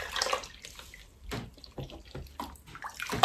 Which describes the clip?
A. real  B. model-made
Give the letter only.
A